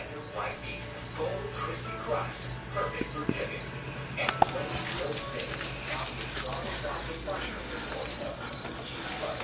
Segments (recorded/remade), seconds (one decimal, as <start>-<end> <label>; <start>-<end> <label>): 0.0-9.4 recorded